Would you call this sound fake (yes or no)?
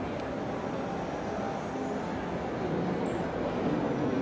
no